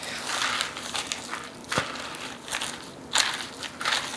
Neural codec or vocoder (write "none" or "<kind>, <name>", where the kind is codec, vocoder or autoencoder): none